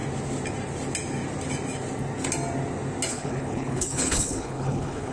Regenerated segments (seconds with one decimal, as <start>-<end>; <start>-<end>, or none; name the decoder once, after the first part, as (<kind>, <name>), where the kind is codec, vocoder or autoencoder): 3.1-5.1 (codec, HILCodec)